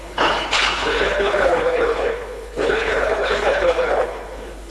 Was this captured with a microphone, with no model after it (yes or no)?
no